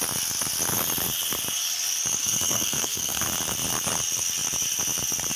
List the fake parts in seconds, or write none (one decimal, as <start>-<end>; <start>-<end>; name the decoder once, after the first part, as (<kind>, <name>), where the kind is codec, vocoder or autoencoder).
2.2-3.2 (codec, SNAC)